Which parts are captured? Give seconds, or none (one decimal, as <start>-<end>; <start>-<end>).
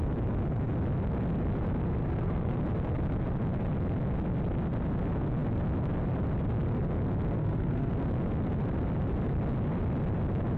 0.0-2.0; 2.6-7.4; 7.9-10.6